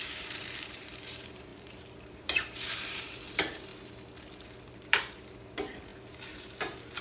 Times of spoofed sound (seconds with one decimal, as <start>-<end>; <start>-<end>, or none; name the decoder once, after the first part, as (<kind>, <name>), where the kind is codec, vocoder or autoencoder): 0.0-3.7 (vocoder, BigVGAN v2); 4.9-7.0